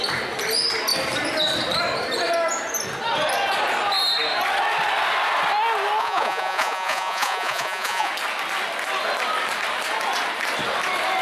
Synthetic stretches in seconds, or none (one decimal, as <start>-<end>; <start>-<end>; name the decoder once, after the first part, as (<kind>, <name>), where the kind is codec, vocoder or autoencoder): 6.0-8.1 (vocoder, Vocos)